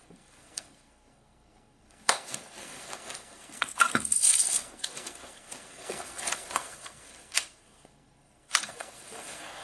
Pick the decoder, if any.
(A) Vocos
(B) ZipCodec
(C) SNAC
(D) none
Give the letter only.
C